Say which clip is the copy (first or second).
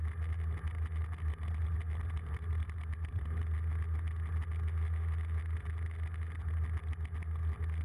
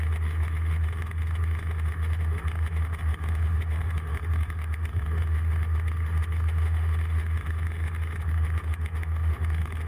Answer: second